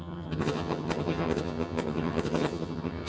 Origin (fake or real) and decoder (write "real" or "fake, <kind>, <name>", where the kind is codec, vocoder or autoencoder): fake, vocoder, HiFi-GAN